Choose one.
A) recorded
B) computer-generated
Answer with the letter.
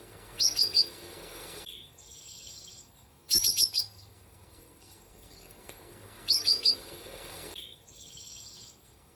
B